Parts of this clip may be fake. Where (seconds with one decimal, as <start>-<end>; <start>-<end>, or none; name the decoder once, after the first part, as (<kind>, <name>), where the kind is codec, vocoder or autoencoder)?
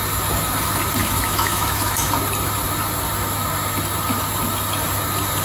1.0-2.1 (autoencoder, DAC-VAE)